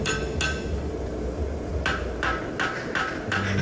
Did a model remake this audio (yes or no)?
no